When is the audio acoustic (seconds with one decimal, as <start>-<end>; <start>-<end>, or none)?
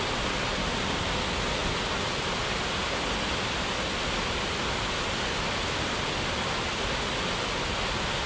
0.0-8.3